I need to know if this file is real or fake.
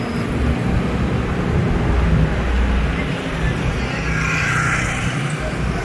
real